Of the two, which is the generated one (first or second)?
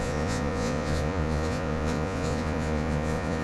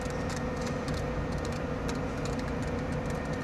first